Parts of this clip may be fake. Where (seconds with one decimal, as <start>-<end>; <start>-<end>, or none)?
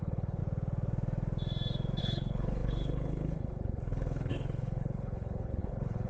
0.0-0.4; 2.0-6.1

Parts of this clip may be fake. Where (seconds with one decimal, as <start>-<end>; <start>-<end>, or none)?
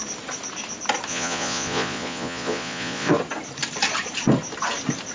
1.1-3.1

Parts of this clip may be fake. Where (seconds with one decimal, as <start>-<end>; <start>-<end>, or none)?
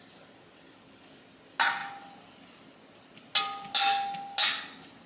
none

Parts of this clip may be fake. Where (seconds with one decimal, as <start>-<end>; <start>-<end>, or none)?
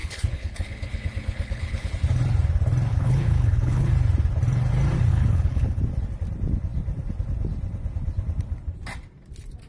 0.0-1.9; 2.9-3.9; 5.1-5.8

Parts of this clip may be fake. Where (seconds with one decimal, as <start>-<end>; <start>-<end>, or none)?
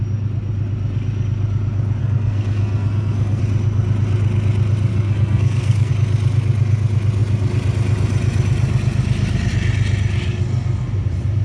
2.0-3.4; 4.9-5.9